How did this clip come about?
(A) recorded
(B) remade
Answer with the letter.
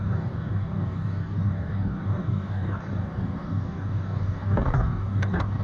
B